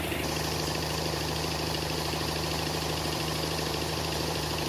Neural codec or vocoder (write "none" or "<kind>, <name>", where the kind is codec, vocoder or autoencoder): vocoder, BigVGAN v2